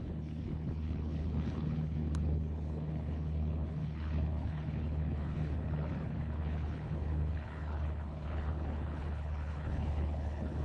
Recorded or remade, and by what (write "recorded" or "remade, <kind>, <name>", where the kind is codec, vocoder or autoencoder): remade, codec, HILCodec